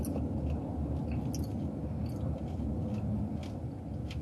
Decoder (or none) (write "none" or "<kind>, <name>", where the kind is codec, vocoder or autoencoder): none